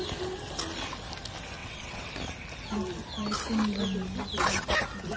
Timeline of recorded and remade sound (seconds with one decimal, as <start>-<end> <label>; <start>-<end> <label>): 0.0-1.6 recorded; 1.6-2.1 remade; 2.1-5.2 recorded